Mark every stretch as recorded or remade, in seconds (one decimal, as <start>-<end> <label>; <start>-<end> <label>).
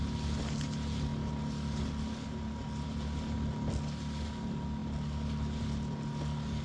0.0-6.6 recorded